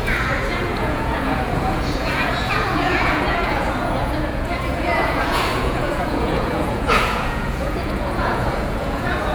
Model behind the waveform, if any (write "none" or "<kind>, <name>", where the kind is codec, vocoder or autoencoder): vocoder, Vocos